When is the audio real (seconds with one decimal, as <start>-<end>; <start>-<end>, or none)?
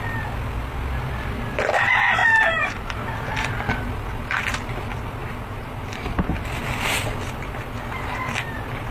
0.0-2.2; 2.9-5.2; 6.0-8.9